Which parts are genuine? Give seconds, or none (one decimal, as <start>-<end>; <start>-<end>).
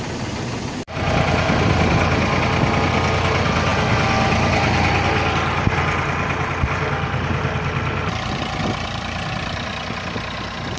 0.0-10.8